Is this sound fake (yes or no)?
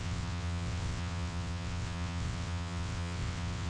yes